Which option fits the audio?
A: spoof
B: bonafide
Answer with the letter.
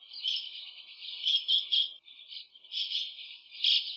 B